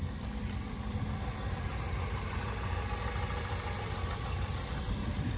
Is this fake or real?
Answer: real